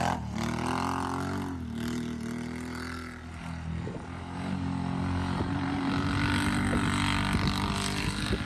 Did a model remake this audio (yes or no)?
no